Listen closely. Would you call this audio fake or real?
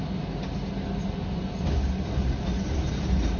real